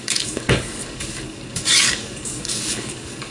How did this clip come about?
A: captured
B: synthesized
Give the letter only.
B